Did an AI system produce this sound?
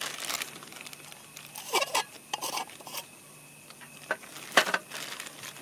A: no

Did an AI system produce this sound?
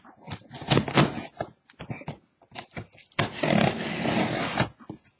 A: no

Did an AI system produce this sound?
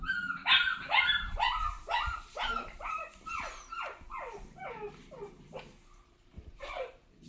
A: yes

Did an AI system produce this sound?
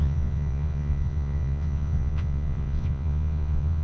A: yes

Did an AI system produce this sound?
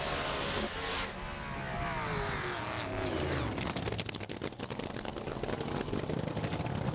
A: no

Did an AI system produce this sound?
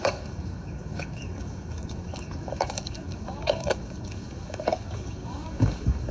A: yes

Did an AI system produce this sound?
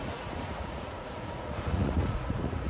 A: yes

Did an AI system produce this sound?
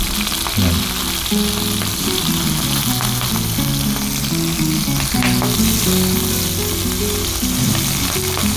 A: no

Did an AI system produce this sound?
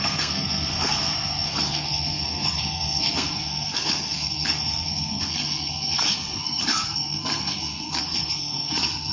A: yes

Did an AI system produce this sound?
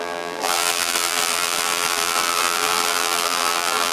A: yes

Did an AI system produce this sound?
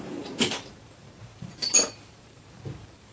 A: yes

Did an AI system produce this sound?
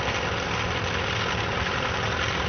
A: no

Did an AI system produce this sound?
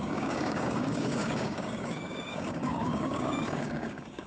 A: yes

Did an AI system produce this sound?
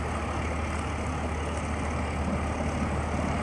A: no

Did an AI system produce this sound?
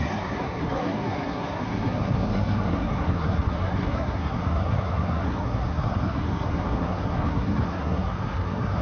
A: yes